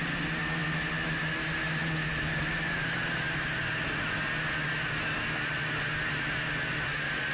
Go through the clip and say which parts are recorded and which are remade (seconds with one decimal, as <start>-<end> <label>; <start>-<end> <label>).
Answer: 0.0-7.3 recorded